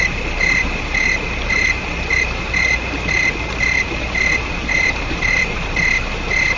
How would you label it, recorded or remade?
remade